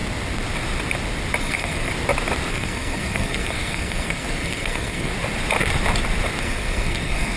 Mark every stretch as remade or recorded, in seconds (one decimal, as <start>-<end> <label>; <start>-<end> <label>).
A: 0.0-1.4 recorded; 1.4-1.9 remade; 1.9-2.5 recorded; 2.5-5.1 remade; 5.1-6.4 recorded; 6.4-7.4 remade